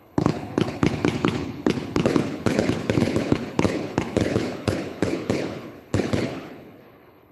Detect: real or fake fake